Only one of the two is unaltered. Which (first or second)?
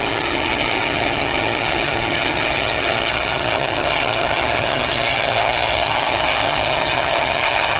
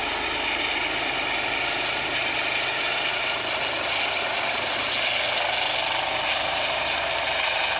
second